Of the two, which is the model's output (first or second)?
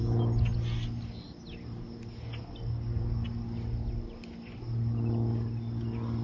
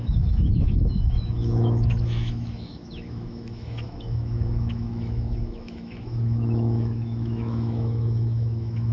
second